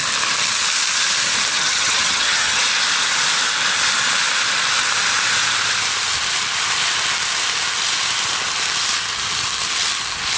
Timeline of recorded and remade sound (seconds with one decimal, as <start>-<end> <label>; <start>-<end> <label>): 0.0-1.5 recorded; 1.5-2.6 remade; 2.6-10.4 recorded